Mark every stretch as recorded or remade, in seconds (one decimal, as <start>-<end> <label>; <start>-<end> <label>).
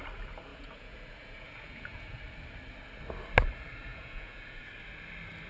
0.0-0.5 recorded; 0.5-2.2 remade; 2.2-3.9 recorded; 3.9-4.6 remade; 4.6-5.5 recorded